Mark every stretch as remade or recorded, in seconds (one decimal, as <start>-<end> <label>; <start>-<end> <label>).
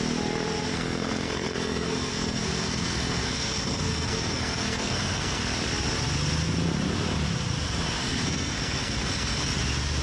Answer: 0.0-0.7 recorded; 0.7-5.4 remade; 5.4-8.0 recorded; 8.0-9.5 remade; 9.5-10.0 recorded